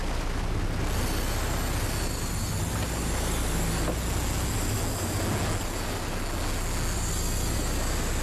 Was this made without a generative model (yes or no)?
yes